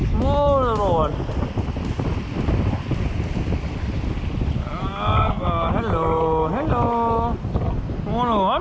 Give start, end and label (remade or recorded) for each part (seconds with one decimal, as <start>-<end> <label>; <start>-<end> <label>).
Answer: 0.0-8.6 recorded